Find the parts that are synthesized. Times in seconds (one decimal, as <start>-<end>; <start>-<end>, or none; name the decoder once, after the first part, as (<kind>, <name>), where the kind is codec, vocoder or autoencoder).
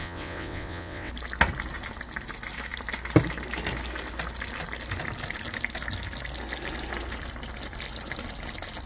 0.0-1.1 (vocoder, WaveNeXt)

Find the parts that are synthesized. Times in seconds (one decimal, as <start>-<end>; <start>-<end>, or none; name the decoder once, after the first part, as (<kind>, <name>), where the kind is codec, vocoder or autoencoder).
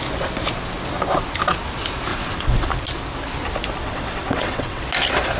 2.1-2.7 (vocoder, WaveNeXt); 3.8-4.8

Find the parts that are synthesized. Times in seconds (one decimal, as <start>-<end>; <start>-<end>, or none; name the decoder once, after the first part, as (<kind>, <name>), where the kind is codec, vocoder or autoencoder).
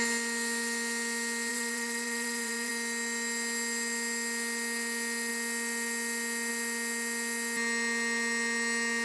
1.5-2.7 (vocoder, WaveNeXt)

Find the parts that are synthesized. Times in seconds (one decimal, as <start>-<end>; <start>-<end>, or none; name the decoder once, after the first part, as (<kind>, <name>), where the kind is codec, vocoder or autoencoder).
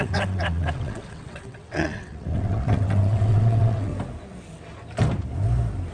0.0-3.9 (vocoder, WaveNeXt)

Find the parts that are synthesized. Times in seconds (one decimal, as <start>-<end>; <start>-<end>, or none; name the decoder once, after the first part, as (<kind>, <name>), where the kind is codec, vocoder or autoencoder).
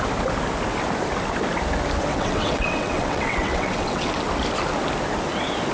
2.1-4.1 (vocoder, WaveNeXt)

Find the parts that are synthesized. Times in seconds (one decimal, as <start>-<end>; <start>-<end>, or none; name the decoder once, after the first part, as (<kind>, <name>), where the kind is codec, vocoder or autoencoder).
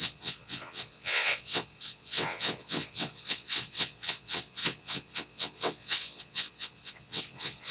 0.0-7.7 (vocoder, WaveNeXt)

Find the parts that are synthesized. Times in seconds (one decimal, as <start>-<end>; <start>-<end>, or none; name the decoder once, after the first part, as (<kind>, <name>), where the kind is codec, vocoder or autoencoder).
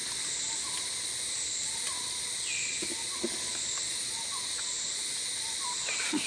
none